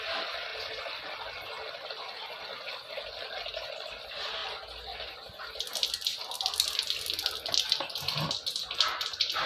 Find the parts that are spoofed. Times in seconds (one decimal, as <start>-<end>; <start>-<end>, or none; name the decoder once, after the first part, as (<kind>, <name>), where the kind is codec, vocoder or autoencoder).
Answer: none